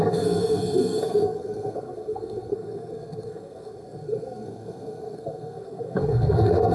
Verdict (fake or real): fake